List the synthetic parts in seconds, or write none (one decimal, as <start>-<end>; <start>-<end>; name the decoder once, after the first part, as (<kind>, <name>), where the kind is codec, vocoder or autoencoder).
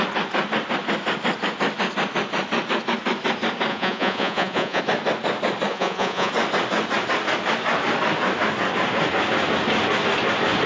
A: 3.7-4.8 (vocoder, Vocos); 5.7-6.3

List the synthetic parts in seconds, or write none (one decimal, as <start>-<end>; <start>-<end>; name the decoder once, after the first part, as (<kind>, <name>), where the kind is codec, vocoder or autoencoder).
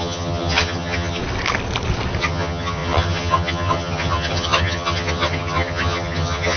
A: 0.0-1.2 (vocoder, HiFi-GAN); 2.2-6.6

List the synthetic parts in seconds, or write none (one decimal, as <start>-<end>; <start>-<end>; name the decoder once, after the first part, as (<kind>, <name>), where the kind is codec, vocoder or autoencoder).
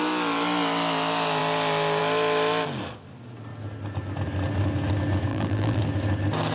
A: 5.3-5.8 (vocoder, BigVGAN v2)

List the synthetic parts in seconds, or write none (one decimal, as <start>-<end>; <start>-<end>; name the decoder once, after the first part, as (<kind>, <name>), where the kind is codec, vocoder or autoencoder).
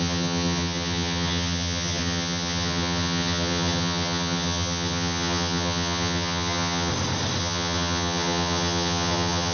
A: 0.0-6.9 (vocoder, HiFi-GAN); 7.4-9.5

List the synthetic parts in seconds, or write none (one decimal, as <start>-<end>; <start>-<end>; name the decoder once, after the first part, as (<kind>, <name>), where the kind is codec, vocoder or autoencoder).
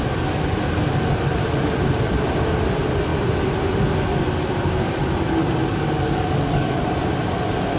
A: 5.4-6.8 (codec, DAC)